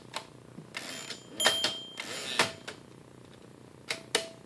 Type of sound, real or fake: real